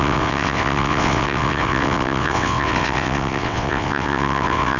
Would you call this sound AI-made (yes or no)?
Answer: yes